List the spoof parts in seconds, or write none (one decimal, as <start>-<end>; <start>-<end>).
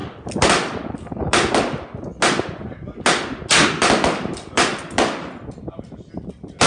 none